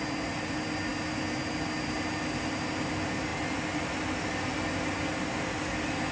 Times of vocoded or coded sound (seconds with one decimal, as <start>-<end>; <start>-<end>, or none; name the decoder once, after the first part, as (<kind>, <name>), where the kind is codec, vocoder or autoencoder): none